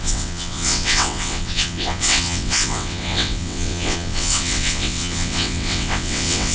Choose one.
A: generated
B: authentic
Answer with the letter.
A